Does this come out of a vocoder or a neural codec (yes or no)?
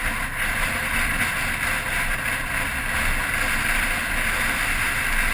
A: no